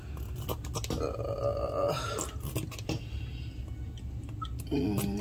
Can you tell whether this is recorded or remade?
recorded